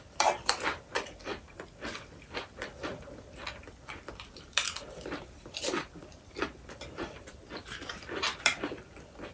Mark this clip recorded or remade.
remade